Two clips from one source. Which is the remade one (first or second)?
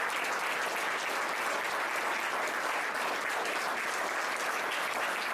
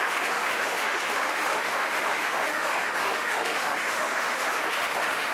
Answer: second